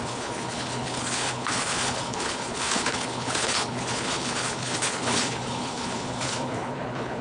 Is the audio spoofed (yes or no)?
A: yes